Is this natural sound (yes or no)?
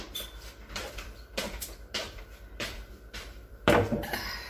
no